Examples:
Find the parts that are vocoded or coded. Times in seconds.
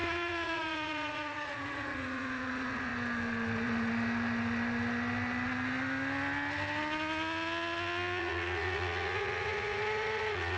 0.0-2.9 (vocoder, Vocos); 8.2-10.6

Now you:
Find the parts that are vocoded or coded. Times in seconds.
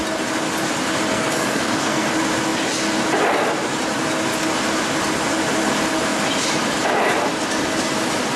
1.1-2.1 (codec, SNAC)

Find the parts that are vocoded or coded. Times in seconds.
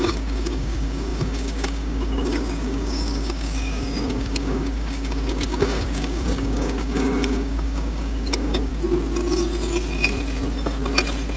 0.0-8.7 (codec, DAC)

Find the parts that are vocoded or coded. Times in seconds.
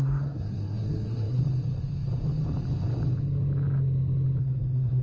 0.0-1.4 (codec, SNAC); 4.4-5.0